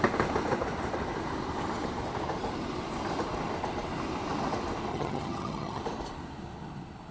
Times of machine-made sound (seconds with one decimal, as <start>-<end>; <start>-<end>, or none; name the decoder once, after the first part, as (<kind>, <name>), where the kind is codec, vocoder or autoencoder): 4.9-5.8 (vocoder, HiFi-GAN)